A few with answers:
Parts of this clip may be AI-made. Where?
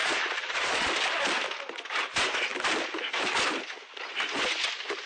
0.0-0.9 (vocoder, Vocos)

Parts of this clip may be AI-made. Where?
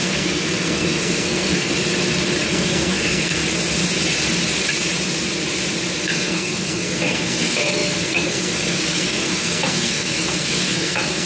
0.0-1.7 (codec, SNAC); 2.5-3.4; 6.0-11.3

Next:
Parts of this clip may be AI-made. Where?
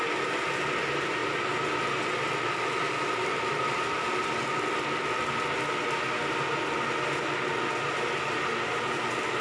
none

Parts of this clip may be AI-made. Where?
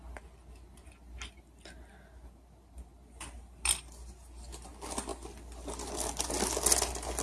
none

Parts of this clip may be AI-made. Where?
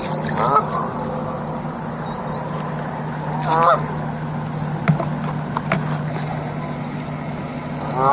none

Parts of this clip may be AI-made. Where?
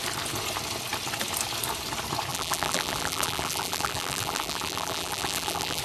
2.3-5.8 (vocoder, BigVGAN v2)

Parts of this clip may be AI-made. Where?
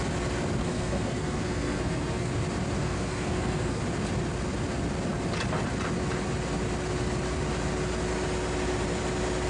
0.6-2.3 (codec, SNAC); 2.8-3.8